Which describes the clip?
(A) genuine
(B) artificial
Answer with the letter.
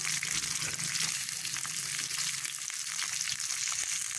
A